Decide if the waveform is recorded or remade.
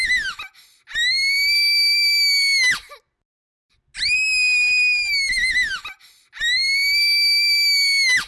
recorded